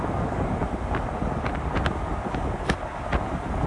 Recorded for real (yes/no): yes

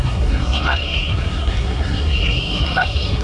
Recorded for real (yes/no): no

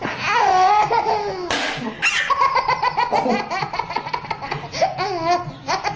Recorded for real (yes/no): yes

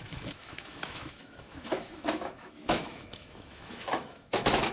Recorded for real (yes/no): no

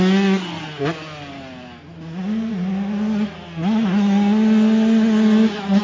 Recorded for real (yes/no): yes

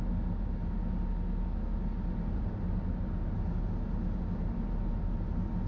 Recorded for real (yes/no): yes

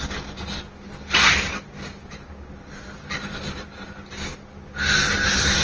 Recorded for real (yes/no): yes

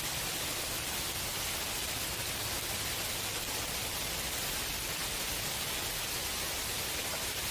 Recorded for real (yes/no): yes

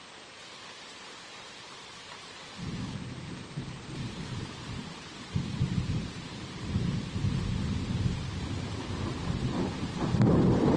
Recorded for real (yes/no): no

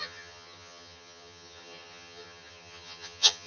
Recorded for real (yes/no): no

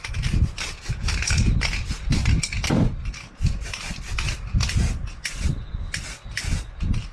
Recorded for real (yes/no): yes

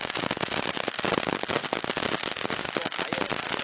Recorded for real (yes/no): yes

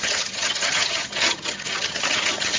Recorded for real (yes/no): no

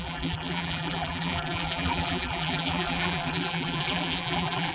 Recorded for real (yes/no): no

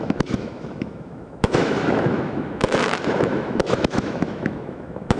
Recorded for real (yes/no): no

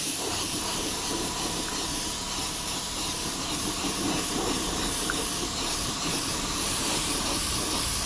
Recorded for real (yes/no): no